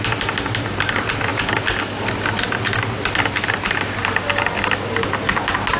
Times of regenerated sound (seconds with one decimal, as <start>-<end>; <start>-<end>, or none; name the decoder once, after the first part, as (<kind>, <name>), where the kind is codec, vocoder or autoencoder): none